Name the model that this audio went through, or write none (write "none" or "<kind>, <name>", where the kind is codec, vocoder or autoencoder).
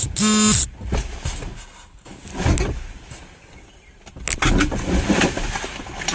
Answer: none